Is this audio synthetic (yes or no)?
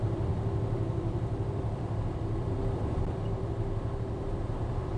yes